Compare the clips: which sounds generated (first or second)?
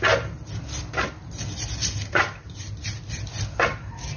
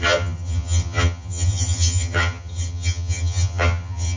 second